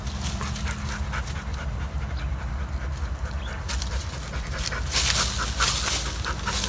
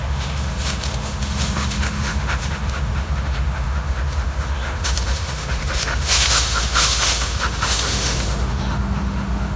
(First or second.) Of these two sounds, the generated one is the second